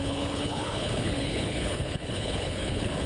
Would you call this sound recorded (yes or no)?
no